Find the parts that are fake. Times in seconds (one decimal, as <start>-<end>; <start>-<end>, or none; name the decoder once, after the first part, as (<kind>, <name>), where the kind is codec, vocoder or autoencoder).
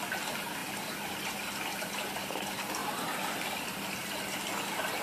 0.6-1.9 (vocoder, BigVGAN v2); 2.8-4.4